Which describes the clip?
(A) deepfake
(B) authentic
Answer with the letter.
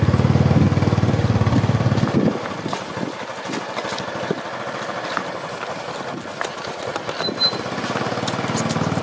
B